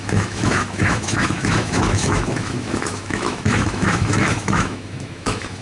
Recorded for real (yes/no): no